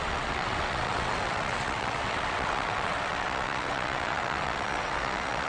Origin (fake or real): fake